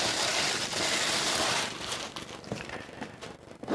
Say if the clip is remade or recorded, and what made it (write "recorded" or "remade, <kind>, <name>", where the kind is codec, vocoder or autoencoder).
remade, vocoder, BigVGAN v2